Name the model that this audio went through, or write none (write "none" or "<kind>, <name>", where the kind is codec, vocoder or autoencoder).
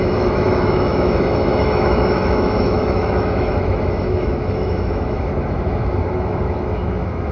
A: autoencoder, DAC-VAE